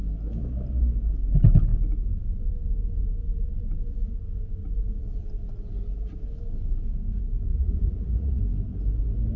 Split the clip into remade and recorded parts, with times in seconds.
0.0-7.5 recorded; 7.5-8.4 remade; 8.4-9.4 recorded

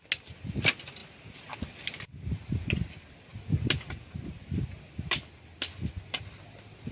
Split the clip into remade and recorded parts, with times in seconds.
0.0-6.9 recorded

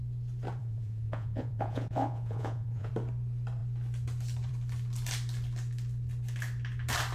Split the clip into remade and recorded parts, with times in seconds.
0.0-0.6 recorded; 0.6-2.9 remade; 2.9-7.1 recorded

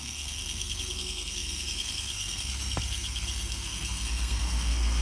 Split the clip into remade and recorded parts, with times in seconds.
0.0-5.0 remade

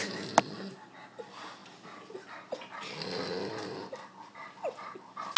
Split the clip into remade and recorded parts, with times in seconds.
0.0-5.4 recorded

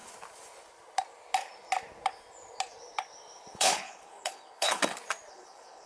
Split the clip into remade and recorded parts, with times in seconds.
0.0-3.5 recorded; 3.5-4.8 remade; 4.8-5.3 recorded; 5.3-5.9 remade

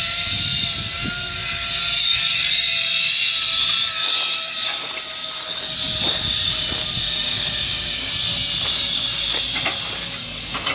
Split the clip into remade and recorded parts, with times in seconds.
0.0-7.0 recorded; 7.0-8.1 remade; 8.1-10.7 recorded

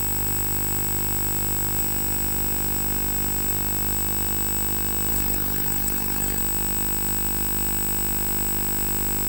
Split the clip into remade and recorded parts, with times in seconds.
0.0-5.1 recorded; 5.1-6.4 remade; 6.4-9.3 recorded